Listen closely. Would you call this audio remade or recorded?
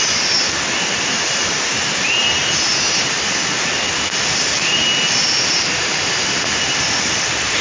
recorded